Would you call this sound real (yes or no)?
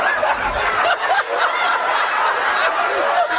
yes